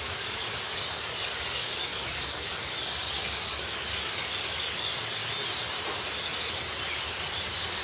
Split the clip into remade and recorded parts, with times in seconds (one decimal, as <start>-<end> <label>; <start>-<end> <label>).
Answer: 0.0-5.2 remade; 5.2-7.8 recorded

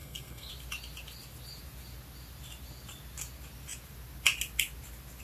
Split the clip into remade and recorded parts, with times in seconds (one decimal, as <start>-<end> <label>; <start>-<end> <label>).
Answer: 0.0-0.5 remade; 0.5-5.2 recorded

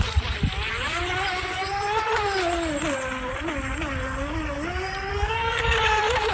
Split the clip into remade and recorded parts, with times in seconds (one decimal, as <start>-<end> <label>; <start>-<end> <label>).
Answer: 0.0-5.1 recorded; 5.1-5.6 remade; 5.6-6.3 recorded

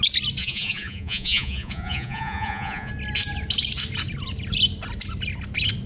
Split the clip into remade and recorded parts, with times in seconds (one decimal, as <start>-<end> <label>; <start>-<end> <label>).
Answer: 0.0-0.4 recorded; 0.4-2.9 remade; 2.9-5.9 recorded

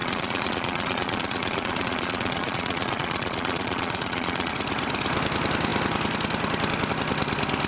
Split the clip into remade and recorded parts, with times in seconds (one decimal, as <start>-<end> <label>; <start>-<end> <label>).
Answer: 0.0-4.5 remade; 4.5-7.7 recorded